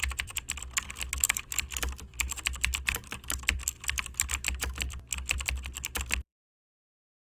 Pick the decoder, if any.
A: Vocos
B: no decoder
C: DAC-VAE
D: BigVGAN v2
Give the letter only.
D